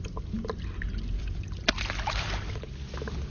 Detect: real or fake real